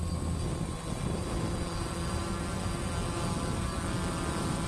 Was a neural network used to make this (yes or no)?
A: no